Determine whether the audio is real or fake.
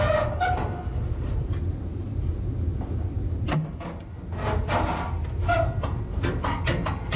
real